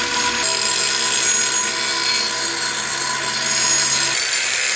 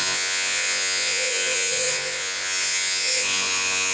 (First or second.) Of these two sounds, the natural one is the first